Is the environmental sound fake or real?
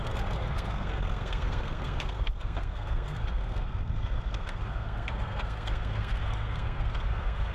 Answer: fake